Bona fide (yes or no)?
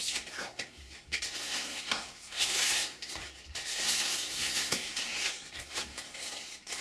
no